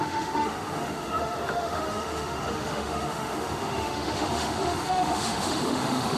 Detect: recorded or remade remade